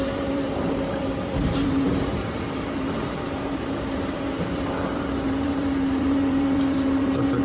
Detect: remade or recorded remade